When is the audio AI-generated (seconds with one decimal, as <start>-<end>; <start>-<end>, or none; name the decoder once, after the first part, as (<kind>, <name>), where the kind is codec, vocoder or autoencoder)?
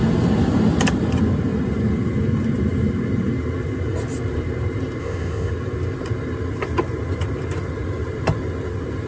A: 5.0-5.5 (codec, ZipCodec)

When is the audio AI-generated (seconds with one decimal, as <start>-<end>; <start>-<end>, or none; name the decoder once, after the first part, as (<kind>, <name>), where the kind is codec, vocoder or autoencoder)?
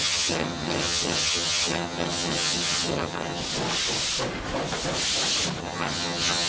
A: 0.0-3.4 (vocoder, HiFi-GAN); 5.6-6.5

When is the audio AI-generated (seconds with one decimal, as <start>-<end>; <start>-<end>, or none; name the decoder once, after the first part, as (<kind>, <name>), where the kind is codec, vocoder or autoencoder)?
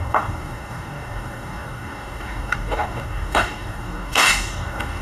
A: 0.0-5.0 (codec, DAC)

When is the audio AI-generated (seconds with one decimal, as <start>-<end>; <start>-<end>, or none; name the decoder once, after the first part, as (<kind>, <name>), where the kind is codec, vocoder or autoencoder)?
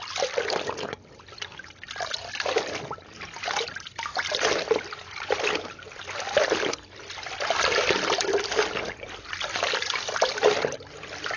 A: none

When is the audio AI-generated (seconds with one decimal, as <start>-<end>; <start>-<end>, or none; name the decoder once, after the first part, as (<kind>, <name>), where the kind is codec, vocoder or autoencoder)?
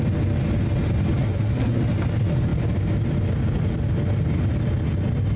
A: 1.2-1.8 (codec, SNAC)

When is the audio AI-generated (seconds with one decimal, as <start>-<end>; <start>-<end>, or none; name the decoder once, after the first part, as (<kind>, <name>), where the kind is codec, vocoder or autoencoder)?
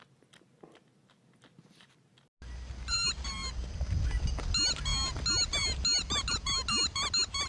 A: none